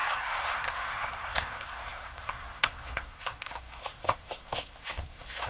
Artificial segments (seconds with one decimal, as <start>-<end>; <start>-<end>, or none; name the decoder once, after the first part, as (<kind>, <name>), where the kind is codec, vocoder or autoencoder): 0.0-5.5 (codec, SNAC)